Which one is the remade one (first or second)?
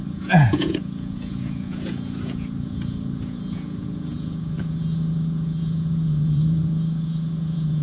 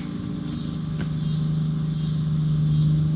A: first